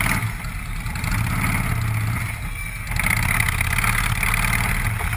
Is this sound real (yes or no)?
yes